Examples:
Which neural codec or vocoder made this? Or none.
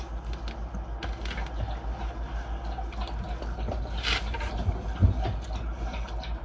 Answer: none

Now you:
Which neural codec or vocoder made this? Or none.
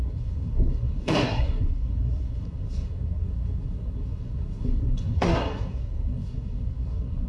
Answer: codec, SNAC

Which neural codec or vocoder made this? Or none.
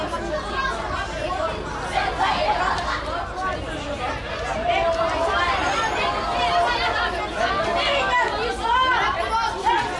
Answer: none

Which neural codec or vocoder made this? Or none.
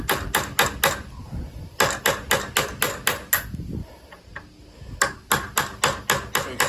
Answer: none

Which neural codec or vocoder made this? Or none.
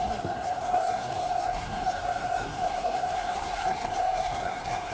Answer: codec, SNAC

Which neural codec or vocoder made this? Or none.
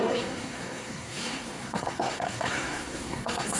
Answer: codec, SNAC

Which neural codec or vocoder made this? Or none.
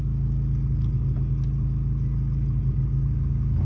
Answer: none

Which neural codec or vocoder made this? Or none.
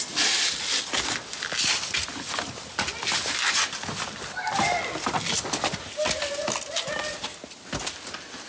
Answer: none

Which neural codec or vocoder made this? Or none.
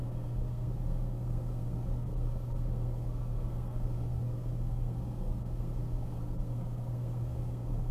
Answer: codec, SNAC